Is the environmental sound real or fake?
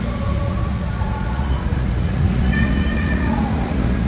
fake